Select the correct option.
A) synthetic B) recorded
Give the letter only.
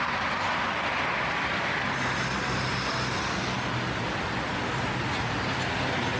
B